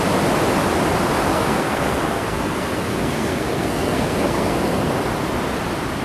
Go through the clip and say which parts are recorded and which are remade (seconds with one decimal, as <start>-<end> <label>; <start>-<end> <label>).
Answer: 0.0-1.3 recorded; 1.3-4.9 remade; 4.9-6.0 recorded